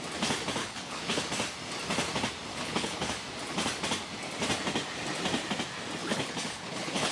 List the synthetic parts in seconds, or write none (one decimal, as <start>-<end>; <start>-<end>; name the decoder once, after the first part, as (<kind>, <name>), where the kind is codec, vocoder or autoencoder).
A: 0.6-1.2 (codec, HILCodec); 2.5-3.1; 6.0-7.1